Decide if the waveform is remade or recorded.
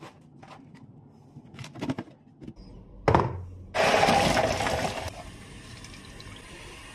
recorded